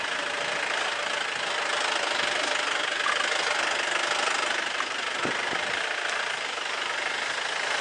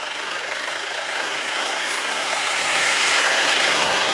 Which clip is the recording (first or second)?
first